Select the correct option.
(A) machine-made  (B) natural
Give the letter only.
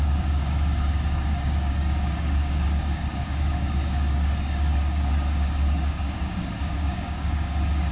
A